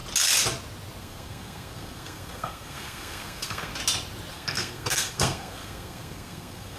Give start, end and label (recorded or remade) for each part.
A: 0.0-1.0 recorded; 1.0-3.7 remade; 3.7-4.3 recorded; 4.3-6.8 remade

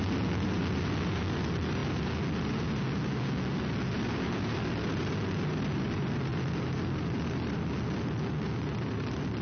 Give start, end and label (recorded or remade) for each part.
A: 0.0-9.4 recorded